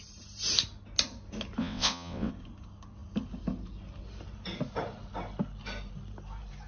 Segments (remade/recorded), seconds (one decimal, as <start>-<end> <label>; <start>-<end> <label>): 0.0-1.6 recorded; 1.6-2.3 remade; 2.3-6.7 recorded